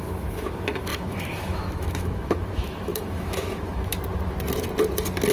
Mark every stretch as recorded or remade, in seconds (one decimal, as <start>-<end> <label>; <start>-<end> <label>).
0.0-3.9 remade; 3.9-5.3 recorded